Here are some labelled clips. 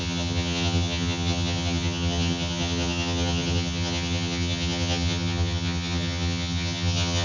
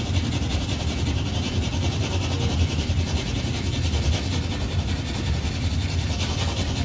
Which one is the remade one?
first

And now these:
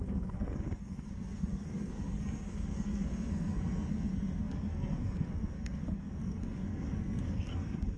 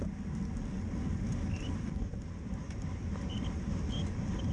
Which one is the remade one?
first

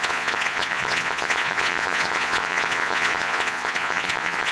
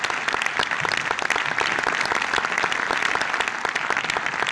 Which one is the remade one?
first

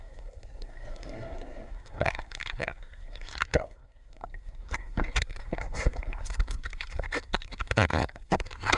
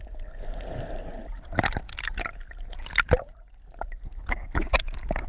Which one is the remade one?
first